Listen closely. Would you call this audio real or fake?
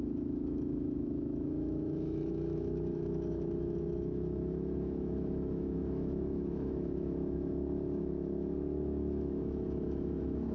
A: fake